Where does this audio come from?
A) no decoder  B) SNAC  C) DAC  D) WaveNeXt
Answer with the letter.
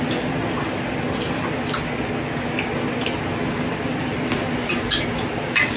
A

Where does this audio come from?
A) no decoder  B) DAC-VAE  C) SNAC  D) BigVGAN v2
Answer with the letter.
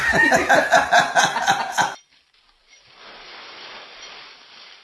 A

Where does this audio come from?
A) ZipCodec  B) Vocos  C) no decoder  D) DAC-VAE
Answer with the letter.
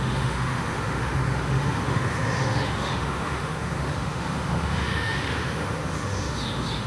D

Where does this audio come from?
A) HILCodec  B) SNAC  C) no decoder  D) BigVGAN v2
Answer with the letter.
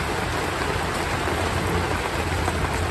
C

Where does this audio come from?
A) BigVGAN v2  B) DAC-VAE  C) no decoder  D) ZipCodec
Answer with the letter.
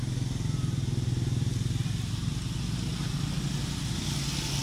C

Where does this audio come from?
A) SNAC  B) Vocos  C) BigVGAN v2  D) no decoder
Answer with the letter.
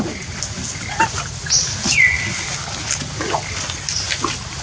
D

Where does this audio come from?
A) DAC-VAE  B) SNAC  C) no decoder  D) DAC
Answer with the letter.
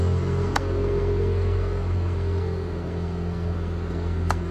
B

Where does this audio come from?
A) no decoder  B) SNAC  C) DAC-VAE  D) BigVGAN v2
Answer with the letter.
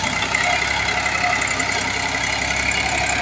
A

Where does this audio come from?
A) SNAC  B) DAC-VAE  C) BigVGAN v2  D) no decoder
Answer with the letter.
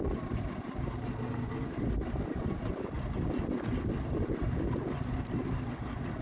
D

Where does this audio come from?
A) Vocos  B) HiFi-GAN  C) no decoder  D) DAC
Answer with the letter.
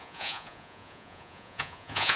A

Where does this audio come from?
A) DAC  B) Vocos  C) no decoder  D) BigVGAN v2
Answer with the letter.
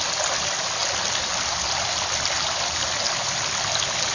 C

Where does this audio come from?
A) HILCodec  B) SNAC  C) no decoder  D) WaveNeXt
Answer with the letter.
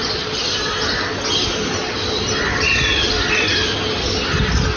C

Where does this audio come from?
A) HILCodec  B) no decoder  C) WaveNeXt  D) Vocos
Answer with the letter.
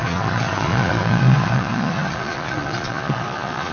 D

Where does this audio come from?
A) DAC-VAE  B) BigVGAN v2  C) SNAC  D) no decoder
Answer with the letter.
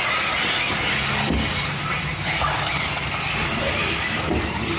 D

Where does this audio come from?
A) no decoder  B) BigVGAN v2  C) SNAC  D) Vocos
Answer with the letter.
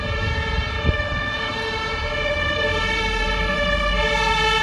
B